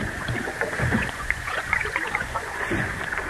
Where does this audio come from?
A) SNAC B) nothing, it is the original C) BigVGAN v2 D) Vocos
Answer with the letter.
D